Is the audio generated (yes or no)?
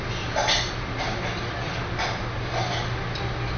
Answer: no